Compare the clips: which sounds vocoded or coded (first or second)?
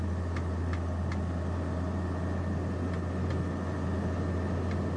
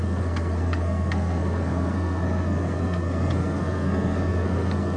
second